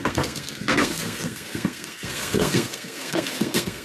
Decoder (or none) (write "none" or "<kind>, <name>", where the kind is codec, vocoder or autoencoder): codec, SNAC